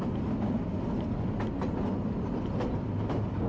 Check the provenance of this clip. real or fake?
real